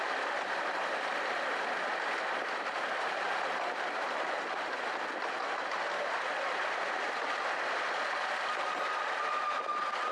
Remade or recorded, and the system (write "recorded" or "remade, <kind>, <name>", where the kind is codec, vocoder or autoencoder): recorded